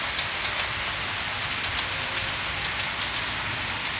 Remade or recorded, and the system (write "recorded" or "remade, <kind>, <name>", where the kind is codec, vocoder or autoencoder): recorded